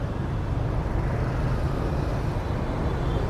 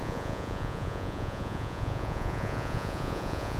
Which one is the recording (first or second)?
first